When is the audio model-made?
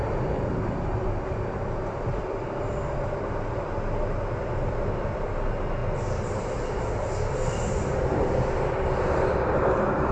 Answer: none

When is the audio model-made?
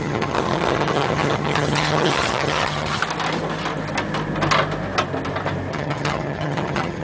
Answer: 0.0-3.0 (vocoder, HiFi-GAN); 5.7-7.0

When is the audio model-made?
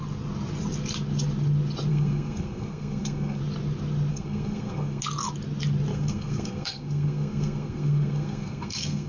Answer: 1.9-3.4 (codec, SNAC); 4.1-5.0; 5.9-9.1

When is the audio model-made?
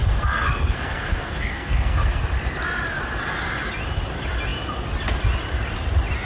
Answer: 0.0-2.2 (codec, SNAC)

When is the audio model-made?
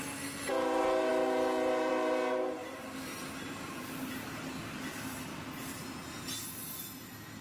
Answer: 2.6-4.1 (vocoder, BigVGAN v2)